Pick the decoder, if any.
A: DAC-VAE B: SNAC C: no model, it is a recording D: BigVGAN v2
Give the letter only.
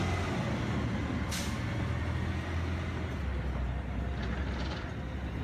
C